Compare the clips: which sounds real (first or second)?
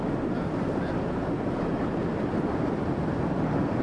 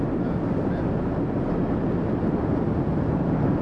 second